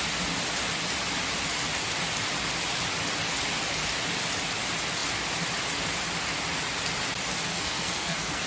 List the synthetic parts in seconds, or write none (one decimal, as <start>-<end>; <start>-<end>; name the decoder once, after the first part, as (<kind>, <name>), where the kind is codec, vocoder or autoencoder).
7.5-8.5 (codec, SNAC)